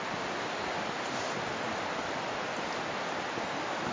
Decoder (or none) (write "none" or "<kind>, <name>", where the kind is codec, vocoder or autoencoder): none